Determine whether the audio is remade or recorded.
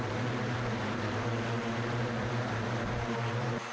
remade